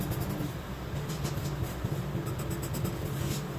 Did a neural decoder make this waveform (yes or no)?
yes